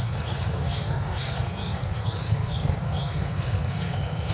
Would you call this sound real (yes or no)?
no